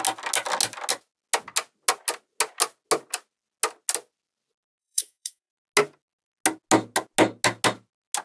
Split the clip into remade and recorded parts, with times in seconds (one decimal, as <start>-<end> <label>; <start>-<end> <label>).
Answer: 0.0-4.8 recorded; 4.8-5.5 remade; 5.5-8.2 recorded